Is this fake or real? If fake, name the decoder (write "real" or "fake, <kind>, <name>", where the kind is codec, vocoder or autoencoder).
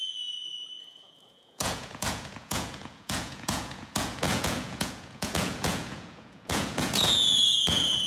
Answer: fake, vocoder, Vocos